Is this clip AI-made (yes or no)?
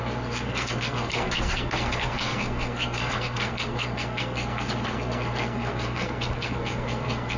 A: yes